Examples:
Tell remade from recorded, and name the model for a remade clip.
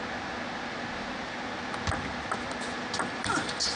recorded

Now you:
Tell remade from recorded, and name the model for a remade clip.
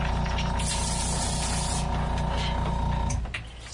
recorded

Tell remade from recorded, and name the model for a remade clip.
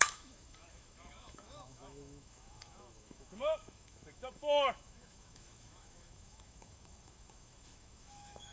remade, autoencoder, DAC-VAE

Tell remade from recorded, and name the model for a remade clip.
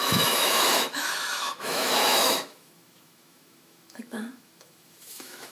remade, autoencoder, DAC-VAE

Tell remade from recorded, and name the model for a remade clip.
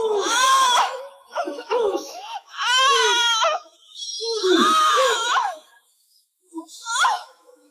remade, autoencoder, DAC-VAE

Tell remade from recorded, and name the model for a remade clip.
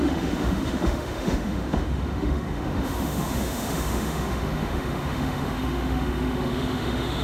remade, autoencoder, DAC-VAE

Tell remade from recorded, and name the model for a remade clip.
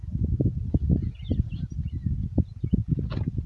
recorded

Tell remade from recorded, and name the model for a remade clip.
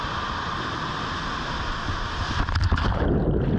recorded